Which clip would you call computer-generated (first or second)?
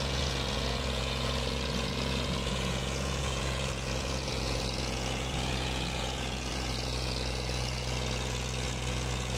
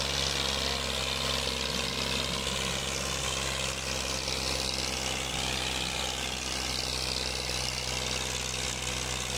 first